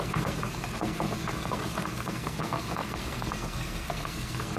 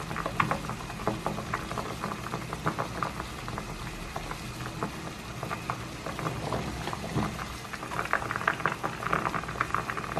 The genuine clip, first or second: second